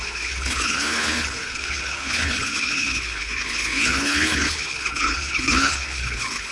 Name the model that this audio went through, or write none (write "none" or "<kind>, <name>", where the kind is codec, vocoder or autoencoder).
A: codec, HILCodec